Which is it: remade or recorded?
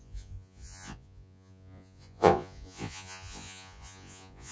remade